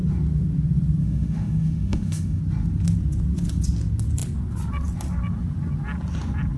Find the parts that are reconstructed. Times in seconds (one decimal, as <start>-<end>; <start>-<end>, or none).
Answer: 1.0-2.4